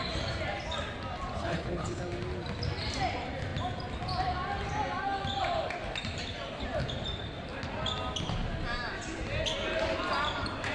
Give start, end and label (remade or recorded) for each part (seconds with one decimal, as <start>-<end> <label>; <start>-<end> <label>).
0.0-1.4 recorded; 1.4-2.0 remade; 2.0-10.7 recorded